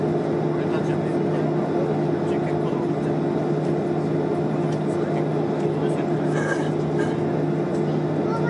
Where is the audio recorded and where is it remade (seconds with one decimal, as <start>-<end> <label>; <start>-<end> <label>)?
0.0-8.5 recorded